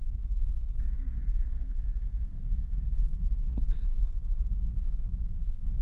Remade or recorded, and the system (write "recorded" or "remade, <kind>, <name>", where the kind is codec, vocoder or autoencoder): remade, codec, SNAC